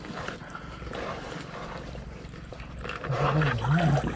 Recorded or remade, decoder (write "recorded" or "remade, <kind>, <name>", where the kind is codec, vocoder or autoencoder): recorded